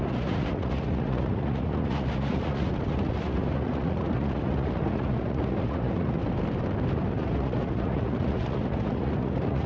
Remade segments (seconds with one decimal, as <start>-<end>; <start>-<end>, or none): 0.0-6.2; 7.1-9.7